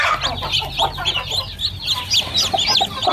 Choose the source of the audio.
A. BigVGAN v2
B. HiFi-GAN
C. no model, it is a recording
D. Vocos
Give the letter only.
C